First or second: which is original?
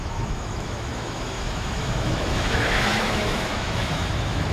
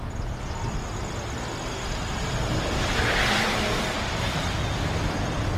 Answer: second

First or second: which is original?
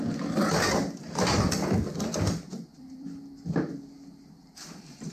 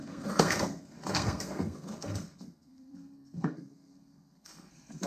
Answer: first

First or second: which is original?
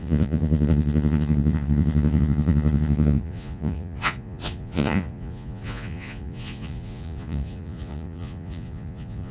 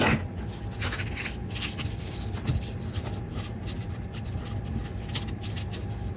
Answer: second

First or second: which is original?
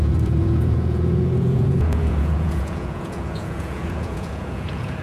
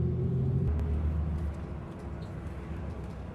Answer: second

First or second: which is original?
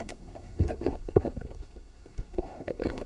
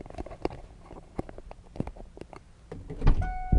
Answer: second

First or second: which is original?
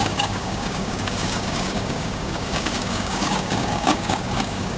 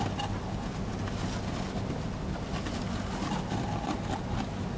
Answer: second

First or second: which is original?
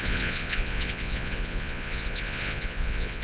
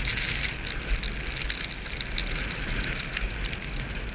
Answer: second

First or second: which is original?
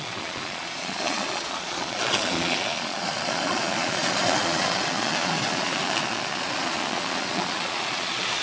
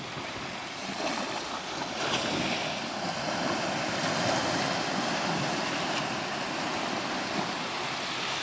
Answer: second